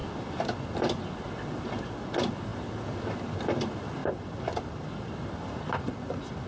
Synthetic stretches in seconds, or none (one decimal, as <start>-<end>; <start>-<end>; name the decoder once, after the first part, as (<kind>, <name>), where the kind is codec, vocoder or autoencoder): 4.0-5.6 (vocoder, BigVGAN v2)